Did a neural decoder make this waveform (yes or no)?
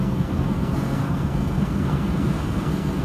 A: yes